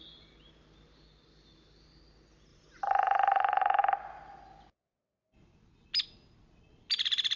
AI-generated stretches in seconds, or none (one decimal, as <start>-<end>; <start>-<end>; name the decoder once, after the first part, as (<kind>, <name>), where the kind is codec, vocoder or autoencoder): 2.5-3.8 (vocoder, Vocos)